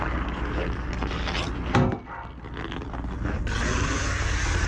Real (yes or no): yes